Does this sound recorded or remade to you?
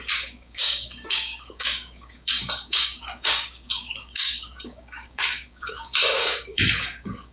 remade